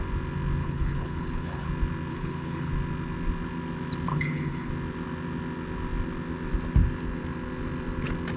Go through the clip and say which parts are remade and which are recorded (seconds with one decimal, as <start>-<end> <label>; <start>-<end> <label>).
0.0-0.6 recorded; 0.6-1.7 remade; 1.7-2.1 recorded; 2.1-2.7 remade; 2.7-4.1 recorded; 4.1-4.7 remade; 4.7-8.4 recorded